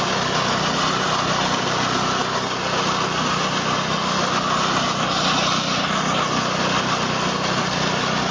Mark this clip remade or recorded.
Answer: recorded